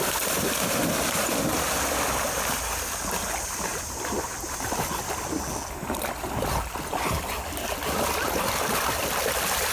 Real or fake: real